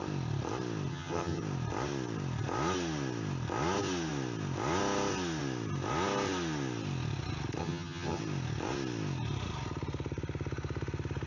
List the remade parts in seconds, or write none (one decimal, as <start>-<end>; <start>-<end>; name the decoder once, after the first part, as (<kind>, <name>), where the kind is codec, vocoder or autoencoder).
0.9-1.4 (vocoder, HiFi-GAN); 7.6-8.2